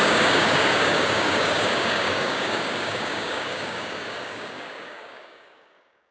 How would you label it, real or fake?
fake